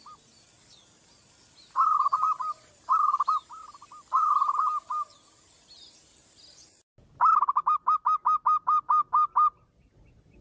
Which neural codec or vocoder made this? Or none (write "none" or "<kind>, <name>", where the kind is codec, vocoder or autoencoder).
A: none